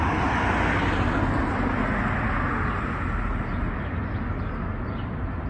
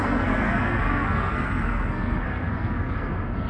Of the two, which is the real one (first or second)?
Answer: first